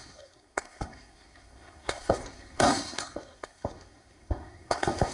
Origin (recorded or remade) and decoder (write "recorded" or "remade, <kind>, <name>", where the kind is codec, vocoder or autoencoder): remade, codec, SNAC